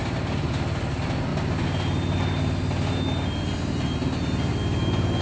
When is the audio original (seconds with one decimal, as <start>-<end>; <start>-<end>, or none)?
0.0-5.2